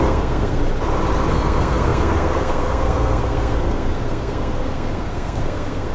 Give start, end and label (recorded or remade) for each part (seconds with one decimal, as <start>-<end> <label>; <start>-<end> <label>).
0.0-0.6 remade; 0.6-1.3 recorded; 1.3-5.9 remade